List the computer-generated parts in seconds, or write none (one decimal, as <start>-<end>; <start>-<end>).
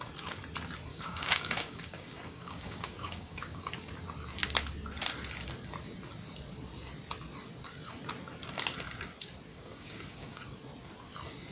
0.9-3.7; 9.5-10.4